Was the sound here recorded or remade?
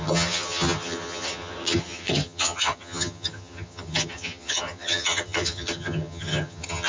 remade